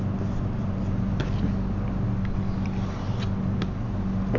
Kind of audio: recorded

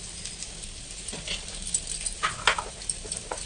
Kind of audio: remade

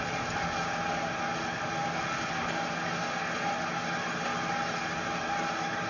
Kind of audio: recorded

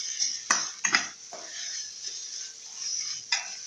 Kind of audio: recorded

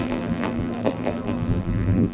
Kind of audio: remade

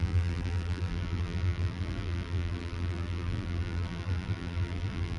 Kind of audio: remade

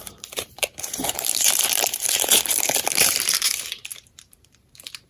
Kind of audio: remade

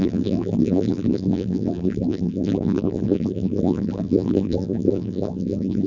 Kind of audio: remade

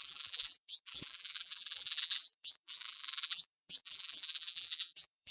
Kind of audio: remade